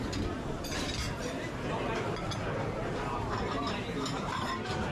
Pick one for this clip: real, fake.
real